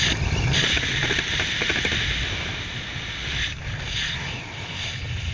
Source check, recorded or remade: recorded